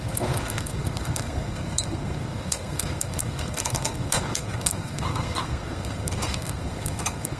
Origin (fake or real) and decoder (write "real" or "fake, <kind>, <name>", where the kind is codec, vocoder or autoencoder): fake, codec, SNAC